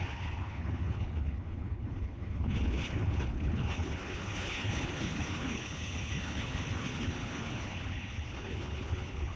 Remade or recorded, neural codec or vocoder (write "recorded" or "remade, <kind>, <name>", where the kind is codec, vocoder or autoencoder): remade, codec, HILCodec